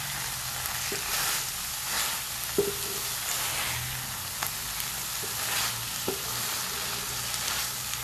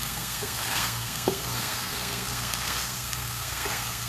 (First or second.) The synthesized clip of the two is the second